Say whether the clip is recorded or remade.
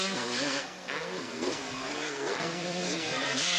remade